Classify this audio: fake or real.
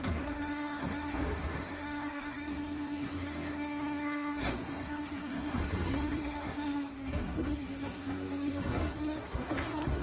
fake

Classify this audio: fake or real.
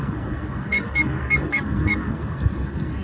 fake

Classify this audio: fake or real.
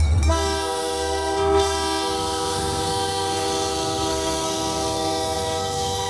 fake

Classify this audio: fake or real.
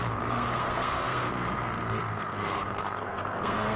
fake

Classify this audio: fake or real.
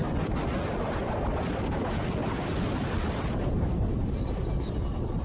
real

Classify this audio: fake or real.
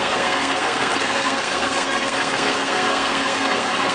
fake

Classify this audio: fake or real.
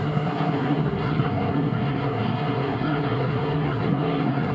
fake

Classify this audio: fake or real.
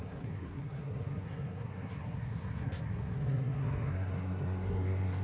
fake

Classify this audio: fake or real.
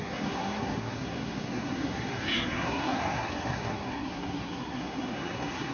fake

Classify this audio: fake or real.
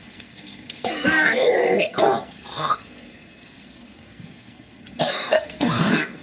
fake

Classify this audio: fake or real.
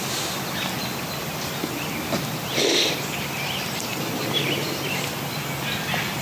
real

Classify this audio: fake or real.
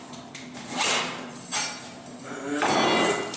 real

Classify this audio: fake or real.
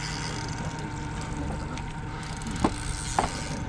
real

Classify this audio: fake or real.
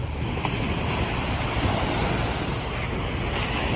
real